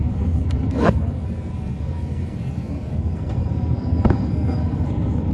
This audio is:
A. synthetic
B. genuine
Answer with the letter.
A